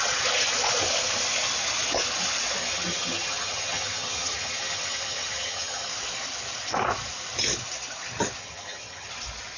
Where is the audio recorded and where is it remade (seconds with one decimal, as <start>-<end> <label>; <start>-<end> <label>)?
0.0-2.6 recorded; 2.6-5.9 remade; 5.9-8.4 recorded; 8.4-9.1 remade; 9.1-9.6 recorded